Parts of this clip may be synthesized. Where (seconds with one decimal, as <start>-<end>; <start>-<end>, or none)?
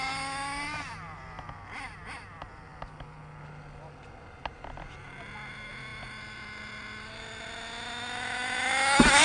none